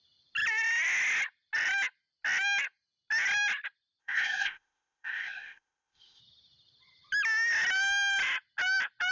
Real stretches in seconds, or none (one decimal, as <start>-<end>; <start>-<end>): 0.0-4.0; 6.2-9.1